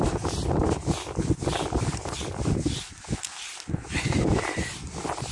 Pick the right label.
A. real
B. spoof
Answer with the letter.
A